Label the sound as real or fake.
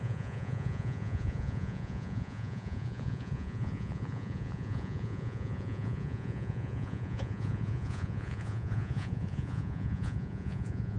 fake